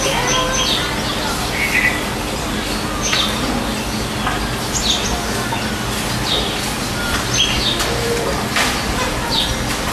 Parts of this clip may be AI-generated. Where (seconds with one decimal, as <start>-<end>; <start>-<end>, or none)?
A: none